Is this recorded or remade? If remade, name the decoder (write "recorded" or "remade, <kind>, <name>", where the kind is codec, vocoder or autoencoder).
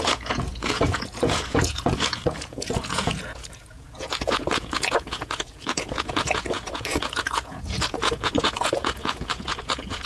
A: remade, vocoder, Vocos